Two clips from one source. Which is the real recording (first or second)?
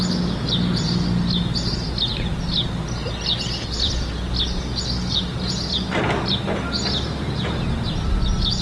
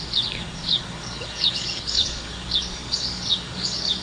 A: first